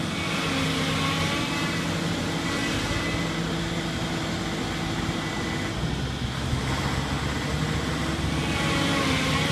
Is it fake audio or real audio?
real